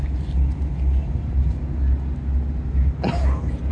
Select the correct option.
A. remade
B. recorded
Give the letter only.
B